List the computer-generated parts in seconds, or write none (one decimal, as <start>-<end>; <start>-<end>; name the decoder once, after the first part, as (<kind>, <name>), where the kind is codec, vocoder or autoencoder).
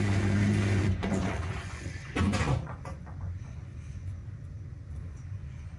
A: 0.0-4.2 (vocoder, Vocos); 4.9-5.8